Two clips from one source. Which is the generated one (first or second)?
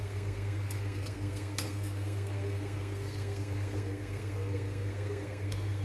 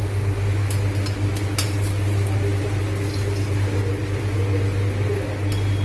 first